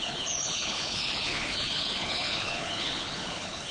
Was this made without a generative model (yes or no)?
no